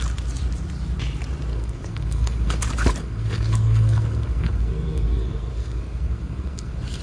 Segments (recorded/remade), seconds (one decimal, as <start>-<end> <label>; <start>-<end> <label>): 0.0-1.5 recorded; 1.5-2.6 remade; 2.6-3.0 recorded; 3.0-7.0 remade